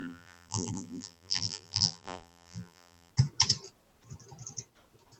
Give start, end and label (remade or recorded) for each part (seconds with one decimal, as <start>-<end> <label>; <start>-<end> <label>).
0.0-3.1 remade; 3.1-5.2 recorded